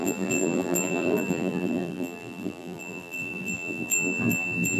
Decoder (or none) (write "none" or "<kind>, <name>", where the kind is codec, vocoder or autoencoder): vocoder, BigVGAN v2